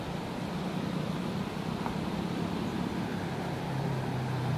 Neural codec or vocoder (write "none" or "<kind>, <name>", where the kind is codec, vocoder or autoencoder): none